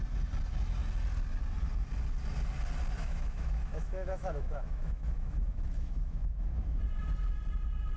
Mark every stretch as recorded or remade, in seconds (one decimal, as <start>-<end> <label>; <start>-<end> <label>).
0.0-3.0 recorded; 3.0-6.8 remade; 6.8-8.0 recorded